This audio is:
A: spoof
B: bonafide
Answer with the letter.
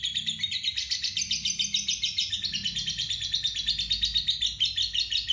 B